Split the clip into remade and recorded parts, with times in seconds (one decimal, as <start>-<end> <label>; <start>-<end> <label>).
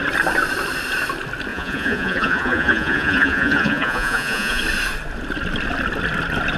0.0-1.5 recorded; 1.5-4.6 remade; 4.6-6.6 recorded